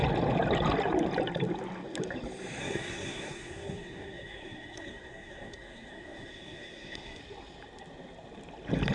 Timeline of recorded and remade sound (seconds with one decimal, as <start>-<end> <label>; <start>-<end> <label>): 0.0-2.6 recorded; 2.6-7.2 remade; 7.2-8.9 recorded